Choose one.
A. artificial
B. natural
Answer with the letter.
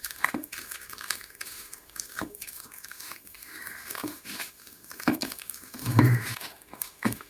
A